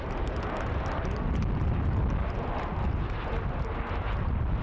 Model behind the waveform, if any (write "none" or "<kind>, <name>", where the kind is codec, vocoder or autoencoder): none